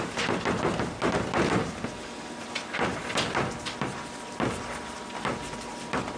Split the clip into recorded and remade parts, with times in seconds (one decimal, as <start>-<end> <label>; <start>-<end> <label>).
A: 0.0-6.2 recorded